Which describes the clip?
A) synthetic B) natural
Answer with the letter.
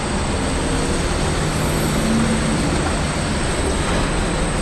B